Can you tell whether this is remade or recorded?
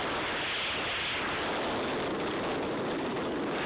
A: recorded